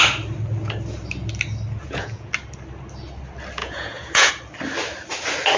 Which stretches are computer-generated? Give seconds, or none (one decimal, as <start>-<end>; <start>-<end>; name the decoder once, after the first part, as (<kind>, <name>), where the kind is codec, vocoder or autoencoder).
1.8-2.3 (vocoder, Vocos); 3.6-4.3